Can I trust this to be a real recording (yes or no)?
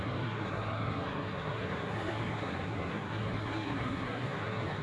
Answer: no